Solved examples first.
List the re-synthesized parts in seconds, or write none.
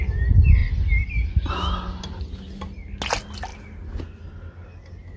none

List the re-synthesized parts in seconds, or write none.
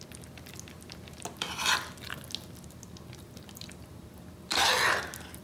none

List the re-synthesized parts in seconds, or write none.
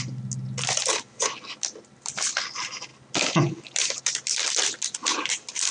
none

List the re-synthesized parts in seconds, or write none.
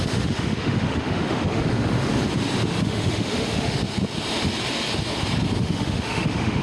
0.0-2.1 (autoencoder, DAC-VAE); 2.8-3.8; 5.6-6.6